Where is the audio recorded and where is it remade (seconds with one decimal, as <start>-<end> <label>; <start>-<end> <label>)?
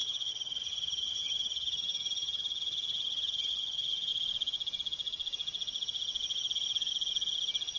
0.0-4.1 remade; 4.1-7.8 recorded